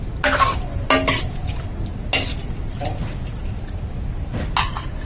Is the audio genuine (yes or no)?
yes